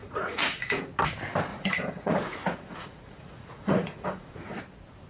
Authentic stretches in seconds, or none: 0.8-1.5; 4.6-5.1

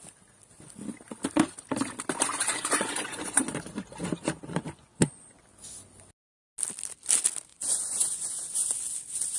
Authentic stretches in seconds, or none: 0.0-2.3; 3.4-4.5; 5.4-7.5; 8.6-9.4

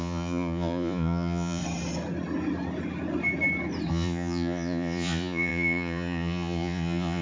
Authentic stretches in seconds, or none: 1.6-3.9

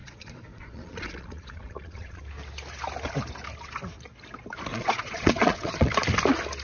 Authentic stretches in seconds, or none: 2.2-4.7; 5.9-6.6